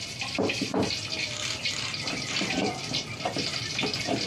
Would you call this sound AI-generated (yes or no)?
no